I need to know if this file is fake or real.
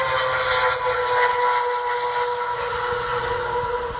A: real